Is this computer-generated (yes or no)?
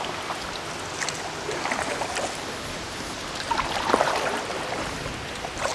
no